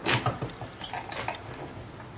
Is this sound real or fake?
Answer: real